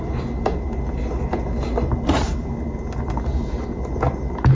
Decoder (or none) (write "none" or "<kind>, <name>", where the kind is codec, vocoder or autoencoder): none